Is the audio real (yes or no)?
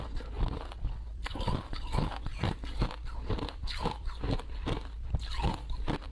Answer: no